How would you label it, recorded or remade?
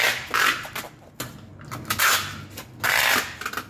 recorded